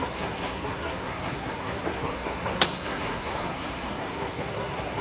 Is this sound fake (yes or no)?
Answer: yes